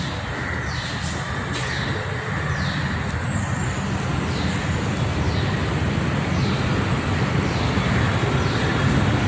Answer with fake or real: real